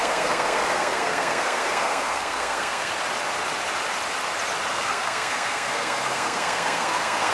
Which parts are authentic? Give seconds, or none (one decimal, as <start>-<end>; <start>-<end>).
2.9-4.7